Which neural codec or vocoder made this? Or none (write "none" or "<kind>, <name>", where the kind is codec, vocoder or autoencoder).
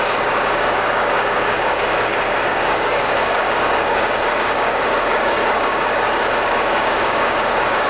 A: codec, DAC